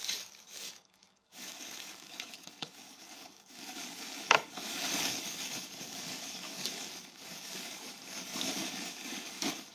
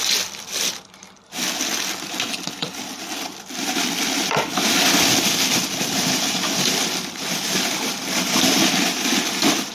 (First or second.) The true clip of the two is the second